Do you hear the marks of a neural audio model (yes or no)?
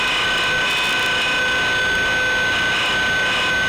no